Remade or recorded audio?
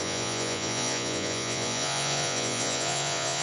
remade